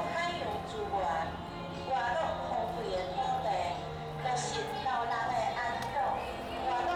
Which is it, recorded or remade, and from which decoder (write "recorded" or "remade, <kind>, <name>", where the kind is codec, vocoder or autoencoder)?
recorded